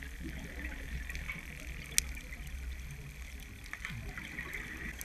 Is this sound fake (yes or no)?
no